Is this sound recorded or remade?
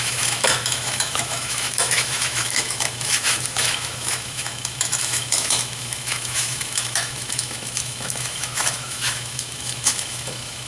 remade